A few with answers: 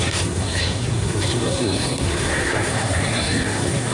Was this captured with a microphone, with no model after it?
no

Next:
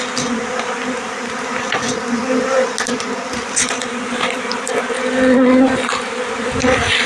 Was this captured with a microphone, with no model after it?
yes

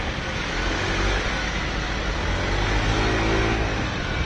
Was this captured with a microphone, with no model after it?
yes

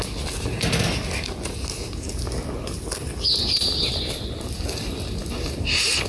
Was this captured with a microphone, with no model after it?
yes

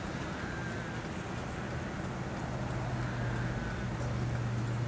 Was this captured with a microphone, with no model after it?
yes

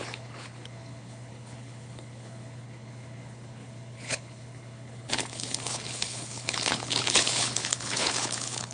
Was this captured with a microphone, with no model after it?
no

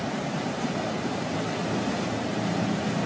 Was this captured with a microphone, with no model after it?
no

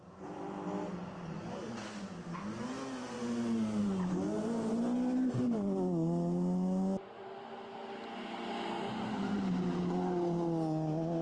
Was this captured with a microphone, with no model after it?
yes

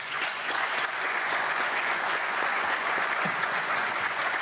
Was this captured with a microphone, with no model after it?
no